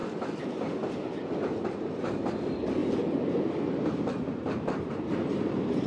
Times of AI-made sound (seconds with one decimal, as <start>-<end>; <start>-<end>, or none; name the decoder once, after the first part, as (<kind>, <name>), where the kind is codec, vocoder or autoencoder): 2.8-5.9 (vocoder, BigVGAN v2)